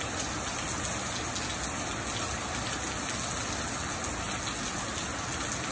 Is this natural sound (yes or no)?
yes